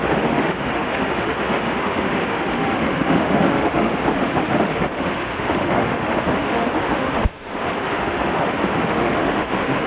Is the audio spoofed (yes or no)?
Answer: yes